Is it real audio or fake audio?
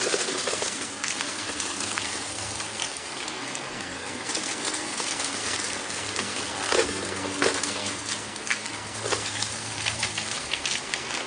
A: fake